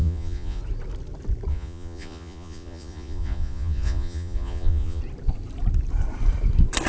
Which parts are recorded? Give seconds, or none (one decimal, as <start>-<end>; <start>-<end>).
0.6-1.5; 5.0-6.9